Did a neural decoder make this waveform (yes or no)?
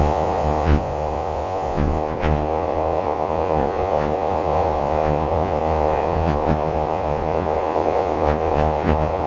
yes